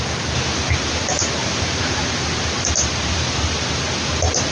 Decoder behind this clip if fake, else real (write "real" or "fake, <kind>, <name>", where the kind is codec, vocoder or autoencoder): real